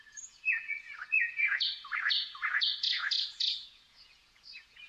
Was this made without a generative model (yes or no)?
no